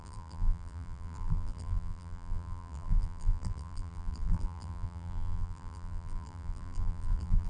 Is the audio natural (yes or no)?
no